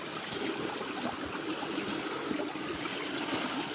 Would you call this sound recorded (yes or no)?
yes